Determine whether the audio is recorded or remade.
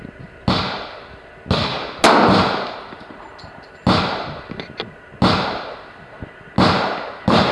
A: recorded